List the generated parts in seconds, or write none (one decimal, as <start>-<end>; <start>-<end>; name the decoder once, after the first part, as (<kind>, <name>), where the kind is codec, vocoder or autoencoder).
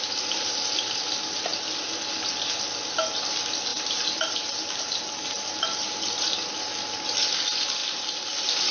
1.5-2.0 (vocoder, BigVGAN v2); 3.7-6.6; 7.8-8.7